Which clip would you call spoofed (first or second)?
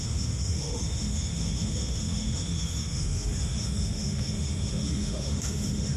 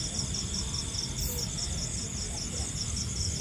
first